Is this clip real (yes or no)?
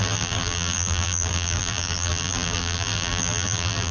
no